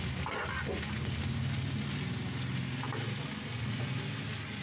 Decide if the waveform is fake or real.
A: real